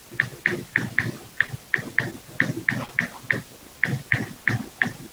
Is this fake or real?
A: real